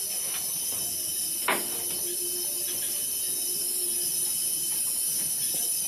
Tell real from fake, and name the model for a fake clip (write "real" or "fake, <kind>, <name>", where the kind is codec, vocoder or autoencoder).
real